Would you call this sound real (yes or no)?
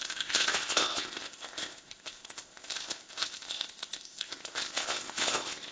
no